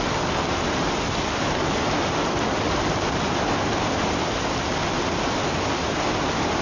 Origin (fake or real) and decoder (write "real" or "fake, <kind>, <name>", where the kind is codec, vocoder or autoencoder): real